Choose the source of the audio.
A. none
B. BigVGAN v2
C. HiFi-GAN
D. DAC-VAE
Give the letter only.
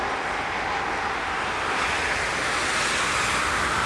A